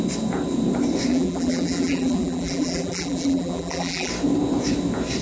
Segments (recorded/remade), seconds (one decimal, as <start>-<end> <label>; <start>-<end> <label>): 0.0-1.1 recorded; 1.1-4.1 remade; 4.1-5.2 recorded